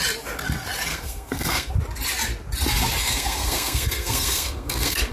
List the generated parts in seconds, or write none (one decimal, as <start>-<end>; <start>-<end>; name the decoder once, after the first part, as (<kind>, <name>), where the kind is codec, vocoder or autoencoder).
0.9-1.7 (codec, SNAC); 3.0-5.1